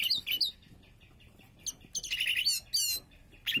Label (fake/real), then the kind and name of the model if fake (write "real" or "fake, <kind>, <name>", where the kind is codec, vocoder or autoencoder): real